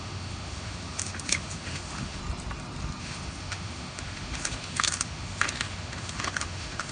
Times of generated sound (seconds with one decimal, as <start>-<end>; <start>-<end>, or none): 0.0-2.2; 3.0-6.9